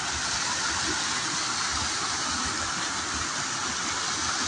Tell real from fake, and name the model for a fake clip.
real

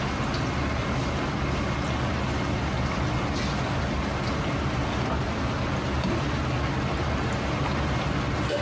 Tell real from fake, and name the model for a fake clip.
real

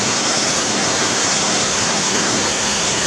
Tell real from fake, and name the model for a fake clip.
fake, codec, SNAC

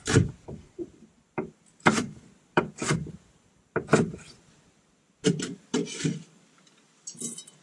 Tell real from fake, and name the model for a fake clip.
fake, vocoder, BigVGAN v2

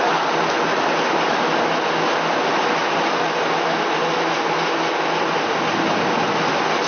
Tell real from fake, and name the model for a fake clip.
real